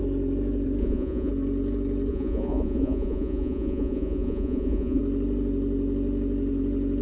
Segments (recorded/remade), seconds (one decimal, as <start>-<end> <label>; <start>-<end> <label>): 0.0-0.8 recorded; 0.8-1.3 remade; 1.3-2.1 recorded; 2.1-5.0 remade; 5.0-7.0 recorded